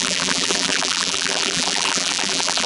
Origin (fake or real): fake